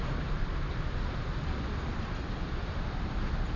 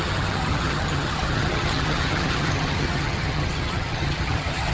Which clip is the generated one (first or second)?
second